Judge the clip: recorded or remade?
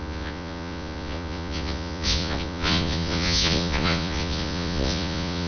remade